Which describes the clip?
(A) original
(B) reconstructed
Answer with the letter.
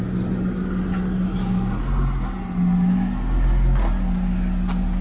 A